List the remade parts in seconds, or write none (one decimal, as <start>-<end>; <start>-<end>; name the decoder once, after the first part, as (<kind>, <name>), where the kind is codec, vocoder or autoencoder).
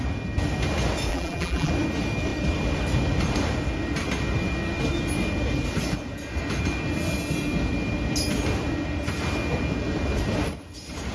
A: 1.1-1.7 (vocoder, BigVGAN v2)